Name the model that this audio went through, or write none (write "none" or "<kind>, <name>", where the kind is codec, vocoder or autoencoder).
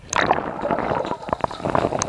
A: none